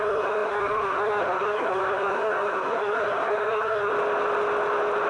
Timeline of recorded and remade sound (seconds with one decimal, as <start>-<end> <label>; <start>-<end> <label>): 0.0-3.9 remade; 3.9-5.1 recorded